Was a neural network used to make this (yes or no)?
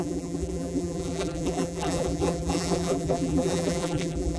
yes